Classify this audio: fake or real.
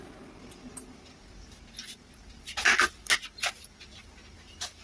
real